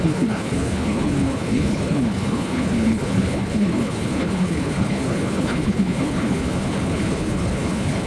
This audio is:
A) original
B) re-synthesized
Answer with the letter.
B